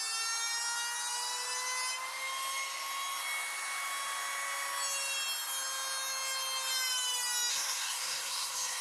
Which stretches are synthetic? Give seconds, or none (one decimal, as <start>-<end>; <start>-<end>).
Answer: 7.5-8.8